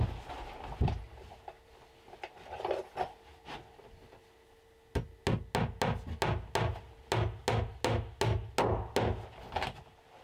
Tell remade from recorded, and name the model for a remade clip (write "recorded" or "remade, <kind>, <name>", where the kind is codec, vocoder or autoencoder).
recorded